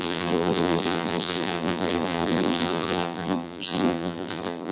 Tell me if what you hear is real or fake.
fake